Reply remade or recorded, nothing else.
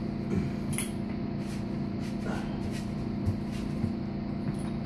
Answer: recorded